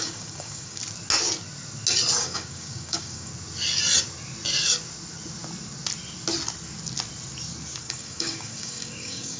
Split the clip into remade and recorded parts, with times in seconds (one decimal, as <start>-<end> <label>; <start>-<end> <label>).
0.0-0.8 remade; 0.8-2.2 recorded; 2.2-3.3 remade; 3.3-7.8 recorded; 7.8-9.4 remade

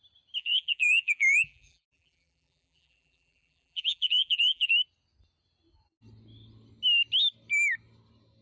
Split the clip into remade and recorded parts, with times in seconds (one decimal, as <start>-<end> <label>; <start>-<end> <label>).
0.0-0.4 recorded; 0.4-4.7 remade; 4.7-8.4 recorded

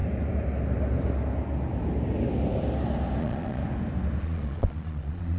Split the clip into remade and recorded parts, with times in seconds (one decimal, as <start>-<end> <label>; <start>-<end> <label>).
0.0-3.2 recorded; 3.2-3.6 remade; 3.6-4.2 recorded; 4.2-5.4 remade

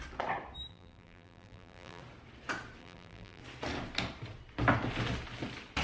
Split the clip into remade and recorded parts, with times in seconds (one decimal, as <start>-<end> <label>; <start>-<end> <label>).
0.0-0.7 recorded; 0.7-2.0 remade; 2.0-2.8 recorded; 2.8-3.4 remade; 3.4-5.8 recorded

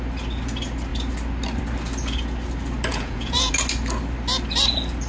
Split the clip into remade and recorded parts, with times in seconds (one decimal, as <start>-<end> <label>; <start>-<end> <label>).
0.0-2.9 recorded; 2.9-3.5 remade; 3.5-5.1 recorded

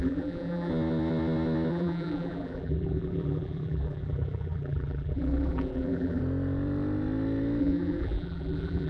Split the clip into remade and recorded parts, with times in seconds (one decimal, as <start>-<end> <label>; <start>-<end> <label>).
0.0-0.7 remade; 0.7-1.7 recorded; 1.7-6.2 remade; 6.2-7.6 recorded; 7.6-8.9 remade

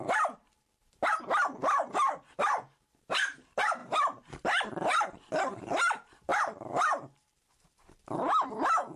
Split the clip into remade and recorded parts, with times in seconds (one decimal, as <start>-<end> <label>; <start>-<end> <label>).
0.0-9.0 remade